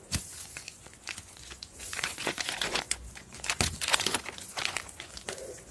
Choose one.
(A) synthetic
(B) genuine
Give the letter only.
A